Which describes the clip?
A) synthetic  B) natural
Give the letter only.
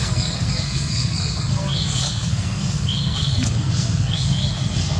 A